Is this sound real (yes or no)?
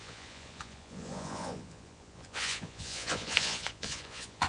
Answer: no